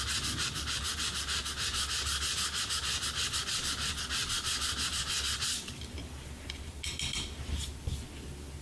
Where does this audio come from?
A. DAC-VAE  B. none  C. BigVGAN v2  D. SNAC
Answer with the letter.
B